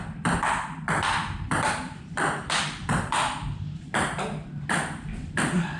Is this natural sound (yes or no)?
no